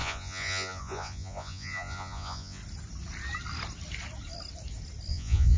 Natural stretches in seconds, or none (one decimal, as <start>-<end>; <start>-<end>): 2.6-5.1